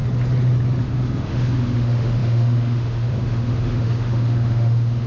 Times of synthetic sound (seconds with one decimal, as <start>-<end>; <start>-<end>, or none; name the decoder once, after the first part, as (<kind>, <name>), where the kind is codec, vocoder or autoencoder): 0.8-5.1 (autoencoder, DAC-VAE)